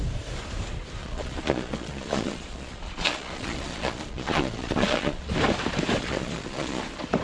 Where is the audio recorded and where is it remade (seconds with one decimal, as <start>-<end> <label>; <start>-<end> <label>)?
0.0-1.0 recorded; 1.0-5.3 remade; 5.3-6.0 recorded; 6.0-6.8 remade; 6.8-7.2 recorded